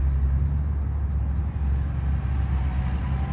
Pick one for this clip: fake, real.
real